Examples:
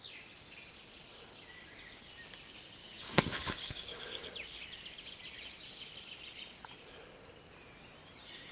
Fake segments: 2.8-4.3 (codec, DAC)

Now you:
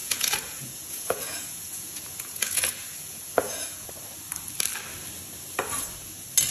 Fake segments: 0.0-3.9 (vocoder, Vocos)

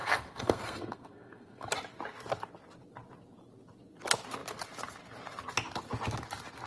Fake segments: 0.0-1.7 (codec, SNAC)

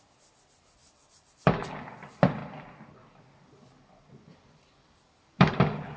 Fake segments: 0.8-1.7 (vocoder, BigVGAN v2); 2.4-3.2; 4.3-5.6

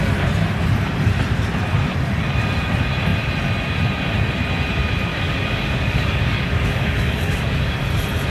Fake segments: 5.1-7.8 (codec, DAC)

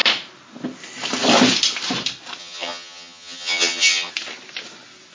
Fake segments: 2.4-4.1 (vocoder, HiFi-GAN)